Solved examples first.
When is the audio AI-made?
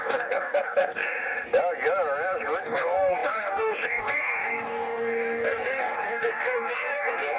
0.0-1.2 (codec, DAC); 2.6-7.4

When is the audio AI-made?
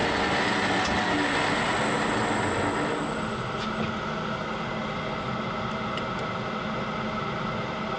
none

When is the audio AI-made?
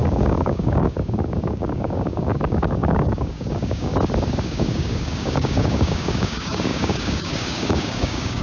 0.0-3.9 (codec, DAC); 4.4-8.4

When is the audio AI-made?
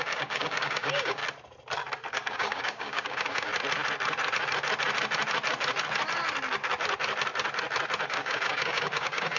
0.0-1.2 (codec, DAC); 2.1-3.5; 8.1-9.4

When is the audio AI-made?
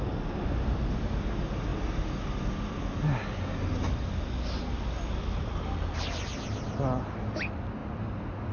none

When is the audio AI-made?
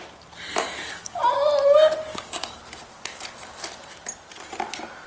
0.5-1.2 (codec, DAC); 2.1-2.6